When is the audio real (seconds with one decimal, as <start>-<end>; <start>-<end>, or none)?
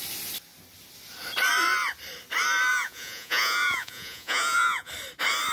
0.0-2.7; 4.9-5.5